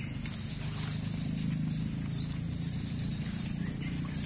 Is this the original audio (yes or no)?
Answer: yes